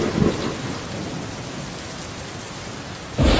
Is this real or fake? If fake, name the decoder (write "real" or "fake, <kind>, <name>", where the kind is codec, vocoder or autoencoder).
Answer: real